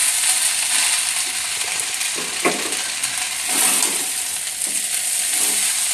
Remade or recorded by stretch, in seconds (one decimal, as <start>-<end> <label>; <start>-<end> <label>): 0.0-0.5 remade; 0.5-5.9 recorded